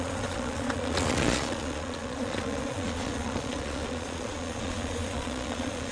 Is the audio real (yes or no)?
no